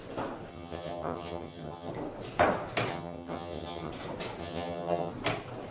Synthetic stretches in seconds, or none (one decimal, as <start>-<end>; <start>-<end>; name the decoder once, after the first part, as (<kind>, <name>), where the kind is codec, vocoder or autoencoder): 0.5-1.9 (vocoder, HiFi-GAN); 2.9-3.9; 4.4-5.1